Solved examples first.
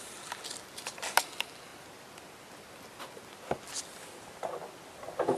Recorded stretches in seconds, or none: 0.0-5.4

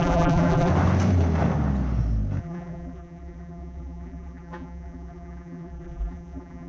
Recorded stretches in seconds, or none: 0.7-2.4

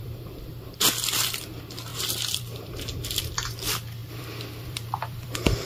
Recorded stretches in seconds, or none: none

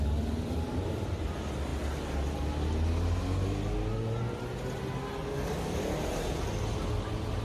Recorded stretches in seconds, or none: 0.0-7.4